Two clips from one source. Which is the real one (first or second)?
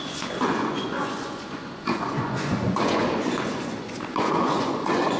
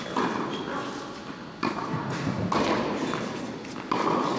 second